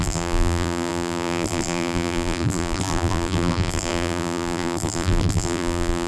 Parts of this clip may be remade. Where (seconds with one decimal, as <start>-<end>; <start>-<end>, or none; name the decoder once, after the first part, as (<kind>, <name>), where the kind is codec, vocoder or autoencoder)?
0.0-6.1 (vocoder, BigVGAN v2)